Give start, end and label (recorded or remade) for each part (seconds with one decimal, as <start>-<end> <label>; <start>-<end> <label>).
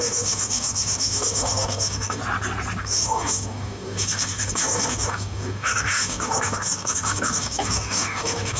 0.0-2.2 remade; 2.2-2.8 recorded; 2.8-8.6 remade